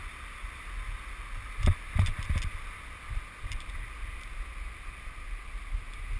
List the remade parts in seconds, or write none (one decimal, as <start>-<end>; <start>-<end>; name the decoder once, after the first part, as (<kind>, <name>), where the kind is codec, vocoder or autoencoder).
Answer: none